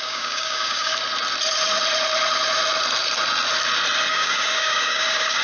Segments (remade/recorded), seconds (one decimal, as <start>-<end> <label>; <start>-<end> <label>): 0.0-0.9 remade; 0.9-4.1 recorded; 4.1-5.4 remade